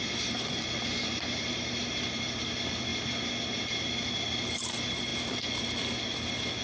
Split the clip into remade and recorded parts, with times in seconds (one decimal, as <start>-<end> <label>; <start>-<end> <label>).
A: 0.0-6.6 recorded